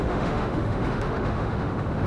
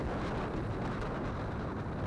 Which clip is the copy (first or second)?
first